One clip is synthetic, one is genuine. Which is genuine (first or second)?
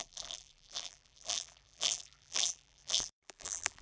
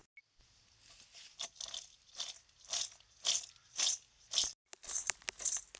second